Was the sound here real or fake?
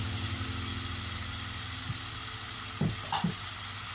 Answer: real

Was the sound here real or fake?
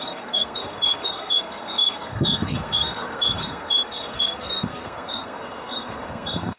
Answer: fake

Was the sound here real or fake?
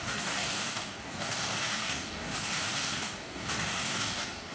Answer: fake